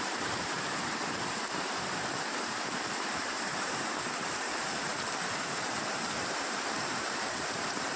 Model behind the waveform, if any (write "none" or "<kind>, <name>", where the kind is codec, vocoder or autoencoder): vocoder, BigVGAN v2